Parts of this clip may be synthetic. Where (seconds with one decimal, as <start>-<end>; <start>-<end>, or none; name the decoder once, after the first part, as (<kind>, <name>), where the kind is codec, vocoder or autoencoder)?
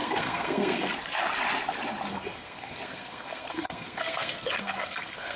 0.0-0.9 (codec, SNAC); 2.1-5.4